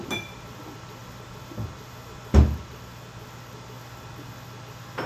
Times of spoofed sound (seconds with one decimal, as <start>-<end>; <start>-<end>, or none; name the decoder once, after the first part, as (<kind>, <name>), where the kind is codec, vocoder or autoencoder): none